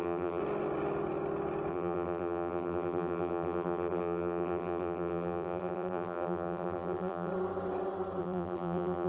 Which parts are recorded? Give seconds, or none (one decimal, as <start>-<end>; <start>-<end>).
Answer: 0.4-1.7; 7.3-8.2